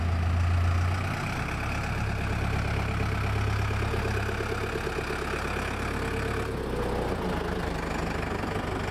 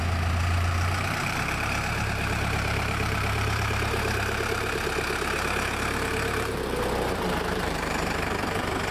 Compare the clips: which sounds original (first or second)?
first